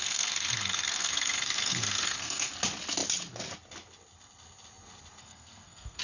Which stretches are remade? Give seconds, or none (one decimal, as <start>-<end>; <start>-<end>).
0.0-2.5; 5.2-6.0